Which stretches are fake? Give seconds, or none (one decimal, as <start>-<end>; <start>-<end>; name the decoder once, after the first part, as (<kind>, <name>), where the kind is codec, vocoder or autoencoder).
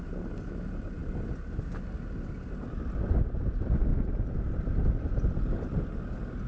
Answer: none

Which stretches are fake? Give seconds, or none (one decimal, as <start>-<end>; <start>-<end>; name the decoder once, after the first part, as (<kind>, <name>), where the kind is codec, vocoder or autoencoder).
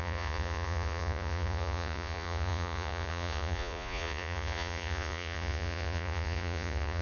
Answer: 0.0-7.0 (vocoder, Vocos)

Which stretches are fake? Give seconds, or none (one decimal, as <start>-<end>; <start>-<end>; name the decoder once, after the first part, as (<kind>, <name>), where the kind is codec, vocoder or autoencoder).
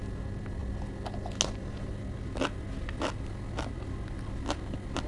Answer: none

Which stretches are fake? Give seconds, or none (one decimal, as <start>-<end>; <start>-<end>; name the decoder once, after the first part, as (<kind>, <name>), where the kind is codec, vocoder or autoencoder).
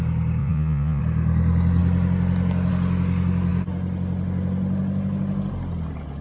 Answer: 0.4-1.0 (vocoder, Vocos)